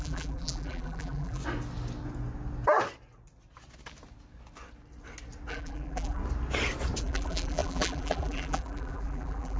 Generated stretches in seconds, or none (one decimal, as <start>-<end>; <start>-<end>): 0.0-1.4; 5.5-6.2; 7.0-9.6